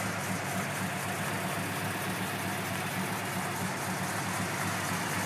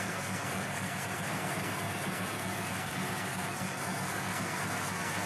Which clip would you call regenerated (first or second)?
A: second